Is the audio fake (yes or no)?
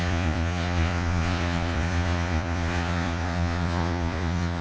yes